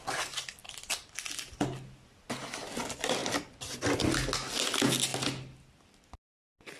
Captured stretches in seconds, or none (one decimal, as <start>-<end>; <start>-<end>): 0.0-3.2; 4.0-6.8